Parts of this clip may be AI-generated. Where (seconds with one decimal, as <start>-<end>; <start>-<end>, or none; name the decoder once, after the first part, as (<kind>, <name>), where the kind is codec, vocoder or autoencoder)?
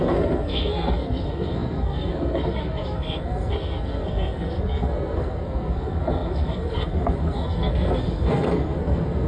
0.0-9.3 (codec, SNAC)